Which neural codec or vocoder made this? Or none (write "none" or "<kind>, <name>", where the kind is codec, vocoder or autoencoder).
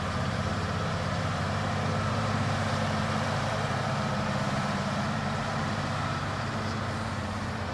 vocoder, BigVGAN v2